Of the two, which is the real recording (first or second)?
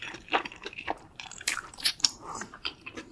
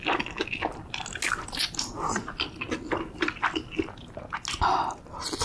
second